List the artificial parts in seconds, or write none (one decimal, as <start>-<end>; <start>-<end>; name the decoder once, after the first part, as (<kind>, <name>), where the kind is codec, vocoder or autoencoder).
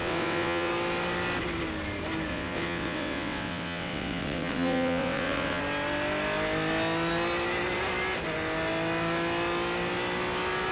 0.0-0.7 (vocoder, WaveNeXt); 2.3-5.6